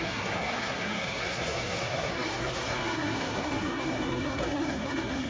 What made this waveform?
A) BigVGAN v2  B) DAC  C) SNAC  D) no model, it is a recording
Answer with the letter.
C